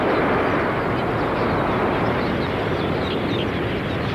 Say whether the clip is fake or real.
real